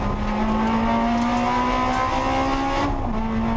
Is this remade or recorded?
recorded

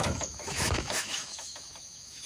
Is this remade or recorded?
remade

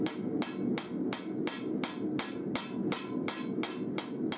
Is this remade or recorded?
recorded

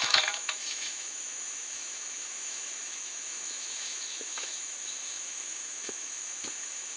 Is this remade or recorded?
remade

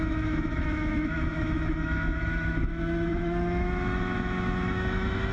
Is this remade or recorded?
remade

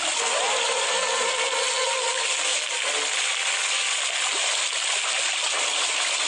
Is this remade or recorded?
recorded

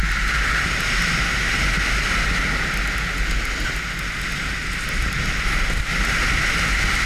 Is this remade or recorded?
recorded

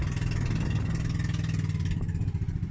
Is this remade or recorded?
recorded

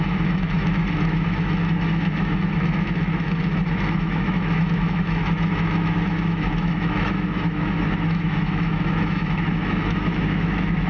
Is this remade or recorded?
remade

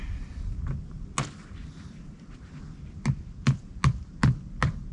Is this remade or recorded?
recorded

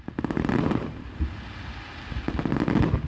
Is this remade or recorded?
recorded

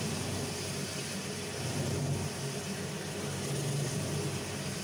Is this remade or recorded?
recorded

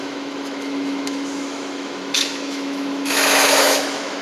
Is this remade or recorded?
remade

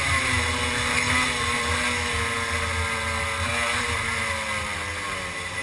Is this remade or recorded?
recorded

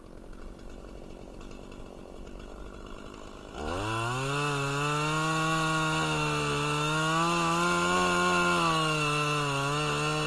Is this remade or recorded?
recorded